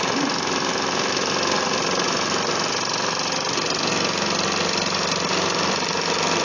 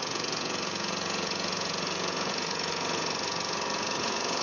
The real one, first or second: first